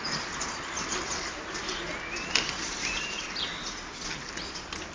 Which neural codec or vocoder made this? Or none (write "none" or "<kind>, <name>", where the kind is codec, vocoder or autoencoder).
none